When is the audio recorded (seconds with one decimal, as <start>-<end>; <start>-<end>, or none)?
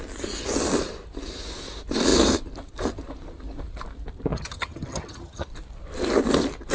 0.0-4.3; 5.5-6.7